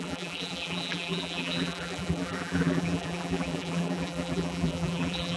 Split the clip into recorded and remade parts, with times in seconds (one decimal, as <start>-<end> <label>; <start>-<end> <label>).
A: 0.0-5.4 remade